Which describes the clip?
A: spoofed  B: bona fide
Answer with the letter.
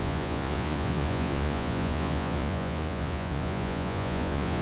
A